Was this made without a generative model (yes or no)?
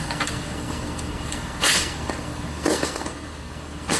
no